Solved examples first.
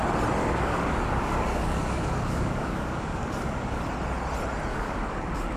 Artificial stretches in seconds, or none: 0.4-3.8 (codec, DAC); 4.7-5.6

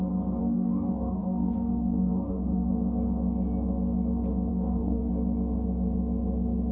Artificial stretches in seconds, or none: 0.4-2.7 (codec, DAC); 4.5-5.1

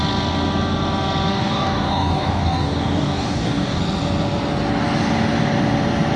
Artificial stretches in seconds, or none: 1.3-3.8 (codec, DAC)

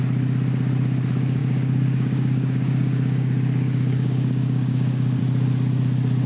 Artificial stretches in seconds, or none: 1.4-5.2 (codec, DAC)